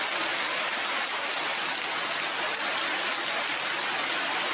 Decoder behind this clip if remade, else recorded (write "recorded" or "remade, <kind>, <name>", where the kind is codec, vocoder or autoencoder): recorded